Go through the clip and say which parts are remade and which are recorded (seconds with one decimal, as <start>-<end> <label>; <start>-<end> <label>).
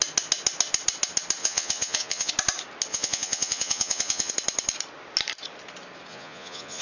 0.0-1.4 recorded; 1.4-2.3 remade; 2.3-2.9 recorded; 2.9-4.3 remade; 4.3-6.1 recorded; 6.1-6.8 remade